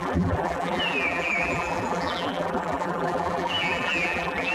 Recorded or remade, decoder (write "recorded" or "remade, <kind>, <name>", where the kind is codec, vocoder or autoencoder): remade, vocoder, BigVGAN v2